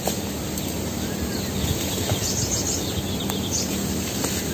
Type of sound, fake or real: real